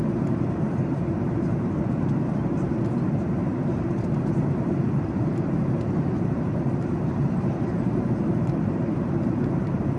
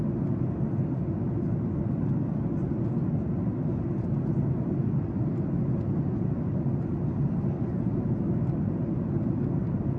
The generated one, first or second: first